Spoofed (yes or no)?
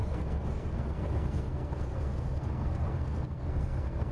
yes